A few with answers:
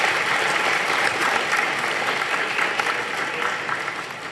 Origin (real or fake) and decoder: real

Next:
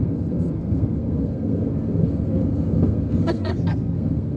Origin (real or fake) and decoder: fake, codec, SNAC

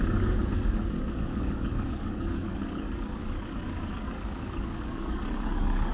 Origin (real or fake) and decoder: fake, codec, DAC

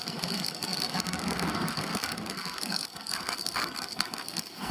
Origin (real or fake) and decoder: fake, codec, SNAC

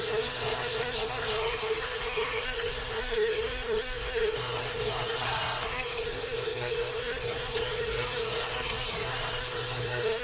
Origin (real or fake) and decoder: fake, codec, SNAC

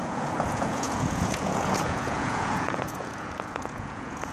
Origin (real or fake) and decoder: fake, vocoder, Vocos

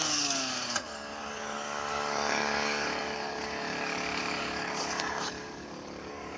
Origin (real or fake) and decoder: fake, codec, DAC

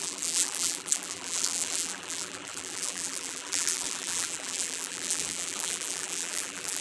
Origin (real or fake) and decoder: fake, vocoder, BigVGAN v2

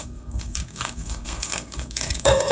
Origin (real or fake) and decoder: fake, codec, SNAC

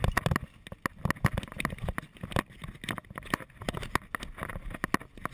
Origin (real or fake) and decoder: real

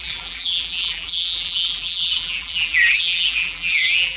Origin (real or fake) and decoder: fake, vocoder, BigVGAN v2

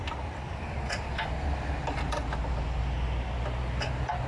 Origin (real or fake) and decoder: real